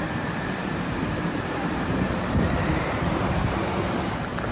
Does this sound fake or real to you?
fake